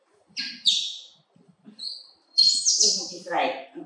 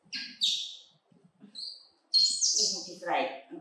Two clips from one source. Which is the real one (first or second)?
second